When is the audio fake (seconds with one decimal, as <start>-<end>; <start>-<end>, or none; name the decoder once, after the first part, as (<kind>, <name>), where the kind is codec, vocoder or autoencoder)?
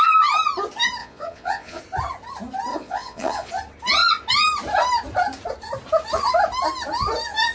1.0-1.8 (vocoder, Vocos); 2.7-3.5